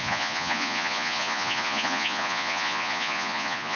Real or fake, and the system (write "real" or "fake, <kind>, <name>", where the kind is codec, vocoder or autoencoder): fake, vocoder, Vocos